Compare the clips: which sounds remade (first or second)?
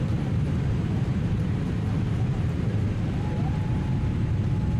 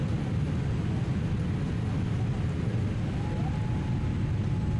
first